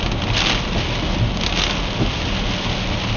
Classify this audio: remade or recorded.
recorded